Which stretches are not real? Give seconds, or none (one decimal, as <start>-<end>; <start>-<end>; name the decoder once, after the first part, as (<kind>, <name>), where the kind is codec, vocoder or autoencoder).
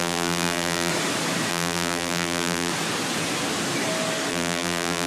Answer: 0.0-0.9 (vocoder, BigVGAN v2); 1.5-2.7; 4.3-5.1